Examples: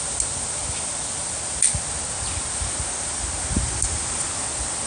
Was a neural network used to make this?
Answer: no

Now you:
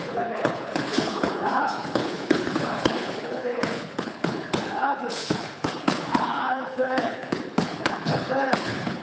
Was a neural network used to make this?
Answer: yes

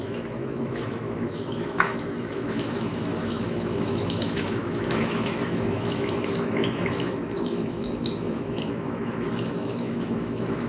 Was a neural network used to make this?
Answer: yes